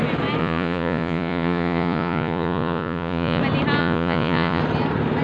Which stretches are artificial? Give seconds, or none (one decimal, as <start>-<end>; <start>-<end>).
0.4-3.4; 3.8-4.6